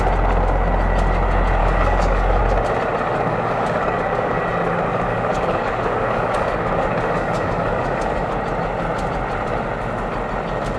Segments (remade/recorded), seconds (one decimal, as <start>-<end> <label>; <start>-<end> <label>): 0.0-1.6 recorded; 1.6-2.4 remade; 2.4-3.1 recorded; 3.1-4.4 remade; 4.4-4.9 recorded; 4.9-8.3 remade; 8.3-10.8 recorded